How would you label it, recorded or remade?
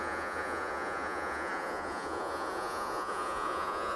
remade